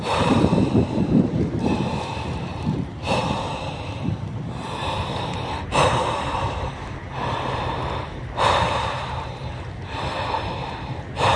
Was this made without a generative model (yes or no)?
no